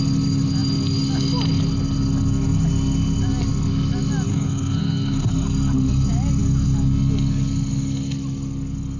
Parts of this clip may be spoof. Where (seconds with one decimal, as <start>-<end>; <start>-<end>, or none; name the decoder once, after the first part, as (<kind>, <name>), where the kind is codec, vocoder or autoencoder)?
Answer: 4.3-5.3 (codec, SNAC)